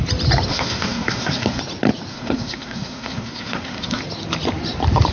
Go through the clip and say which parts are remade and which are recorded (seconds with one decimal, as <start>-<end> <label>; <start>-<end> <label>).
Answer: 0.0-0.5 recorded; 0.5-1.6 remade; 1.6-2.1 recorded; 2.1-4.0 remade; 4.0-5.1 recorded